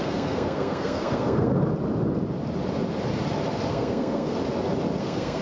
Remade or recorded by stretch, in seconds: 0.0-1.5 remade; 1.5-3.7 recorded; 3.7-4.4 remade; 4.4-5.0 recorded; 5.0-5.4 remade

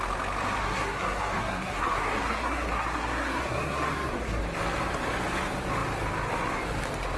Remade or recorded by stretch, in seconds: 0.0-0.6 recorded; 0.6-4.4 remade; 4.4-7.2 recorded

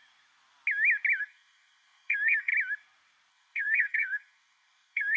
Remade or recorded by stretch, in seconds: 0.0-1.2 recorded; 1.2-2.5 remade; 2.5-3.3 recorded; 3.3-5.2 remade

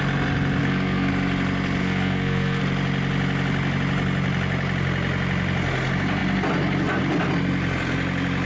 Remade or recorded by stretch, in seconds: 0.0-0.6 recorded; 0.6-1.1 remade; 1.1-1.8 recorded; 1.8-2.6 remade; 2.6-8.5 recorded

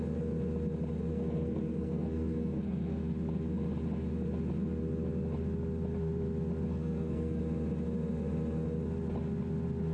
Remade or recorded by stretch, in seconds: 0.0-1.1 recorded; 1.1-3.1 remade; 3.1-6.7 recorded; 6.7-7.4 remade; 7.4-9.9 recorded

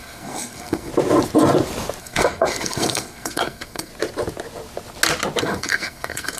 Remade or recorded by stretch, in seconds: 0.0-0.9 remade; 0.9-2.0 recorded; 2.0-3.9 remade; 3.9-5.4 recorded; 5.4-6.4 remade

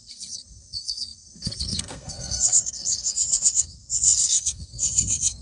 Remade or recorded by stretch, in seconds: 0.0-5.4 remade

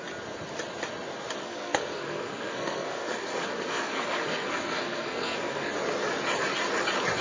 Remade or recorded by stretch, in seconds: 0.0-1.4 recorded; 1.4-5.7 remade; 5.7-7.2 recorded